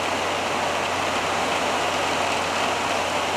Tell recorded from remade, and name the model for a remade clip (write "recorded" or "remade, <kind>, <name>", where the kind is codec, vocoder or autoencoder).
recorded